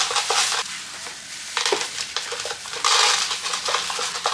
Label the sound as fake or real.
real